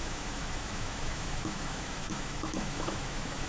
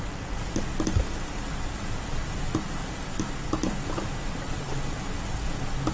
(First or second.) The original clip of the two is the second